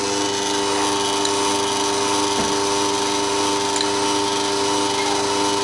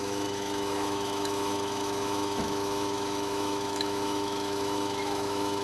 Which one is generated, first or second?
second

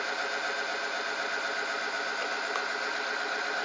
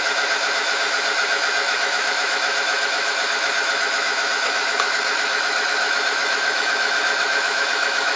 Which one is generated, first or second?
second